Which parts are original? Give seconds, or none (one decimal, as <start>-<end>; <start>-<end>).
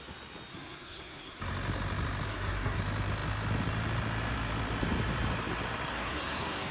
0.0-0.5; 1.4-2.3; 2.8-5.9